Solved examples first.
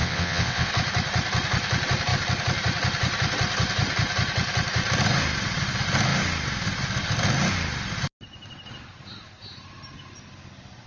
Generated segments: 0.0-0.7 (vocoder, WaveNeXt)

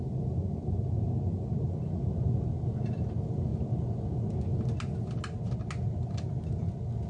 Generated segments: none

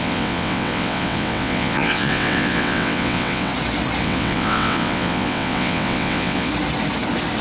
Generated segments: 0.0-3.5 (vocoder, WaveNeXt); 4.0-6.5

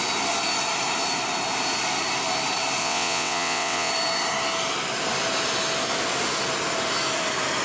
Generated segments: 2.8-3.9 (vocoder, WaveNeXt)

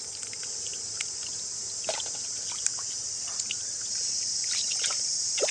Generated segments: none

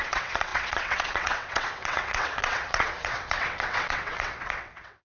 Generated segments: 0.0-5.0 (vocoder, WaveNeXt)

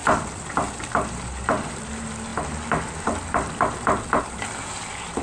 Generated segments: none